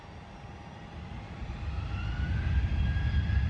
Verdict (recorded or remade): recorded